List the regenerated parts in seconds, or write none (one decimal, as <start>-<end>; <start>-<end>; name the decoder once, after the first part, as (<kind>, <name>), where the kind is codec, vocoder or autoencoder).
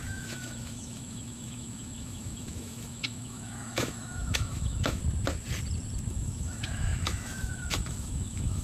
0.0-5.0 (autoencoder, DAC-VAE); 6.1-8.6